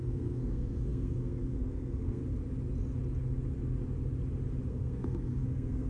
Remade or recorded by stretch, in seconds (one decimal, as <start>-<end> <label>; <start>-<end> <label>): 0.0-2.2 remade; 2.2-4.7 recorded; 4.7-5.9 remade